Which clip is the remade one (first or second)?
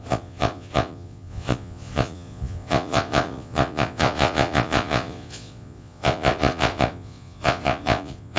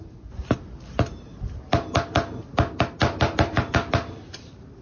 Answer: first